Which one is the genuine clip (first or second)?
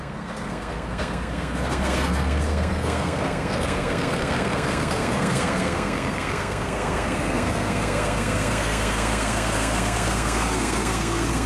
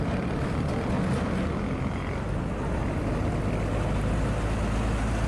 second